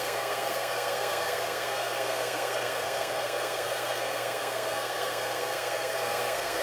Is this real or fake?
fake